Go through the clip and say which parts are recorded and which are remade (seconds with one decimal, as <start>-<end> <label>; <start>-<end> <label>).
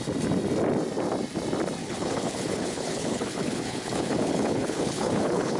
0.0-1.8 recorded; 1.8-5.6 remade